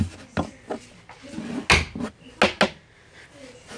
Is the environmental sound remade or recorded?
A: recorded